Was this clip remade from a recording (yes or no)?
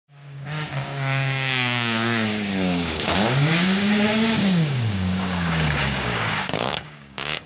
yes